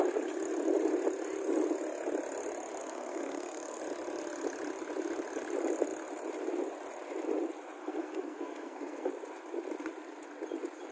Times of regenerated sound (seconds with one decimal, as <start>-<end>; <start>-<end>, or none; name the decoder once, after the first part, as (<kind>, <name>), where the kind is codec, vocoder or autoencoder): 2.8-3.8 (codec, SNAC); 7.8-9.1